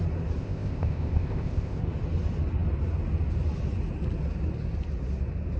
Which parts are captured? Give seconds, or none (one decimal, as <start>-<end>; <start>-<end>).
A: 0.0-0.4; 1.8-5.6